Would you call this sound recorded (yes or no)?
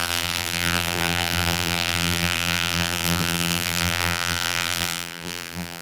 no